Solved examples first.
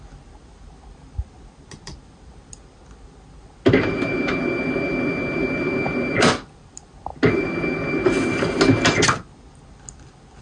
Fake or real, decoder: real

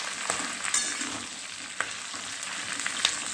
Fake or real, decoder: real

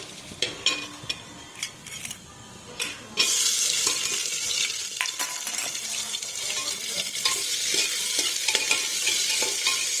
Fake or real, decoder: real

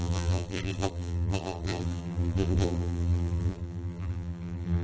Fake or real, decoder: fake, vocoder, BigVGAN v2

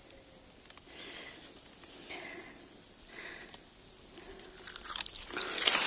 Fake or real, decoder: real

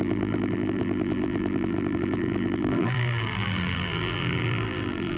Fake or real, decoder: fake, vocoder, BigVGAN v2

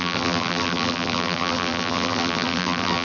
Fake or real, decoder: fake, vocoder, BigVGAN v2